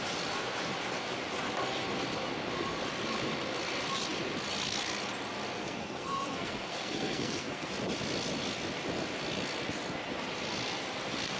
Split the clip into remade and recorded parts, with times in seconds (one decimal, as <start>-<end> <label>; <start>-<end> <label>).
0.0-5.6 recorded; 5.6-7.7 remade; 7.7-11.4 recorded